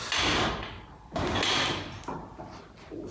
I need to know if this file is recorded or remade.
recorded